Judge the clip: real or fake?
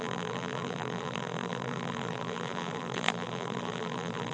fake